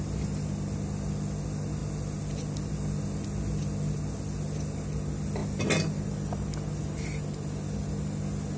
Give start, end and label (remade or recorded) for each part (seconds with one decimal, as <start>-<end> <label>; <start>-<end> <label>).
0.0-8.6 recorded